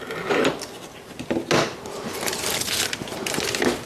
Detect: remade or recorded recorded